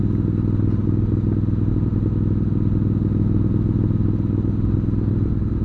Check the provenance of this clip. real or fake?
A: real